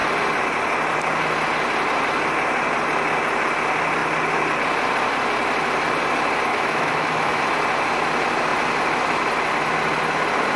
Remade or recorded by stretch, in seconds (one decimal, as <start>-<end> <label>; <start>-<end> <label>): 0.0-6.5 recorded; 6.5-7.5 remade; 7.5-10.6 recorded